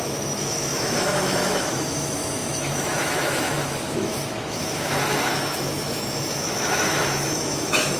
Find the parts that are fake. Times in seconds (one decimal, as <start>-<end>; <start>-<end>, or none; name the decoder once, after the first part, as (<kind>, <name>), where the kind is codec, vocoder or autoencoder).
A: 0.0-8.0 (autoencoder, DAC-VAE)